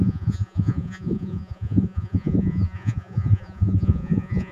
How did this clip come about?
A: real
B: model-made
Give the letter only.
B